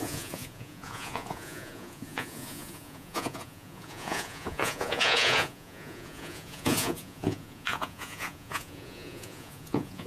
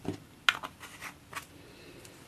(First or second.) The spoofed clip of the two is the first